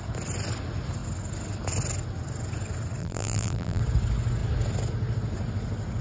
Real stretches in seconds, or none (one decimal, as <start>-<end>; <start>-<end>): 0.0-3.0; 3.8-6.0